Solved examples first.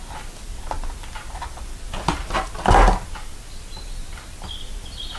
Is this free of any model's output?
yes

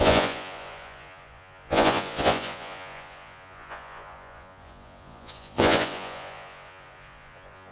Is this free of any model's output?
no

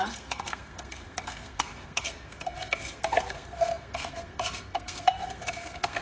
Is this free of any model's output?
no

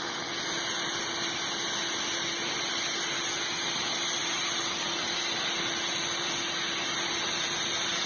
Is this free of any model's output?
yes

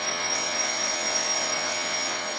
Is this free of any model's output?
no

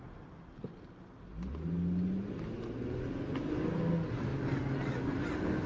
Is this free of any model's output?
yes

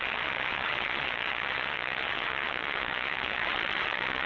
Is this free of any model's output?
no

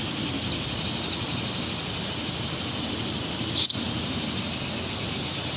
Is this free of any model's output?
yes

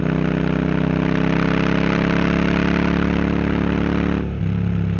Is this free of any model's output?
yes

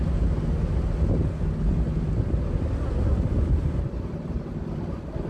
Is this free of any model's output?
yes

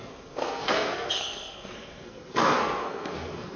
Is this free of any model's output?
no